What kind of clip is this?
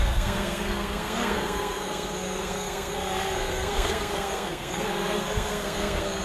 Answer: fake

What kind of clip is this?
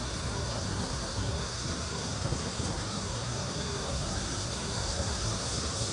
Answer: fake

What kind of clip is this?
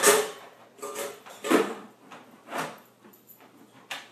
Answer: real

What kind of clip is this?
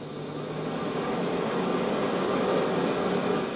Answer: real